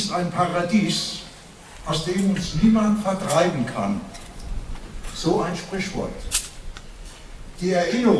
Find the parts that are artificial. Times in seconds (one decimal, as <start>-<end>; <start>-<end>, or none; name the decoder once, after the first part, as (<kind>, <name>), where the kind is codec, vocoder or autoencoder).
2.5-3.5 (vocoder, Vocos); 3.9-8.2